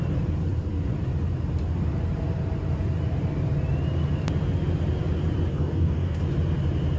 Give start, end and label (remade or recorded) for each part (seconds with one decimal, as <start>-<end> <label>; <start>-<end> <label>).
0.0-5.5 recorded; 5.5-6.2 remade; 6.2-7.0 recorded